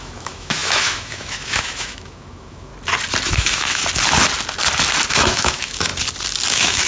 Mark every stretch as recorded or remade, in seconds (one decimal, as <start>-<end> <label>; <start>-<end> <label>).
0.0-2.7 remade; 2.7-3.3 recorded; 3.3-3.8 remade; 3.8-5.1 recorded; 5.1-5.9 remade; 5.9-6.5 recorded; 6.5-6.9 remade